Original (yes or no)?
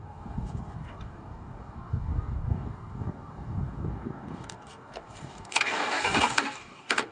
no